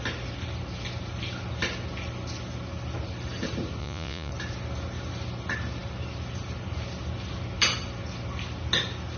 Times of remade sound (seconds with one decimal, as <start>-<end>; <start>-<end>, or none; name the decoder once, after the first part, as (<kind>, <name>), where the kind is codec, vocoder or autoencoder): 3.8-4.3 (vocoder, Vocos)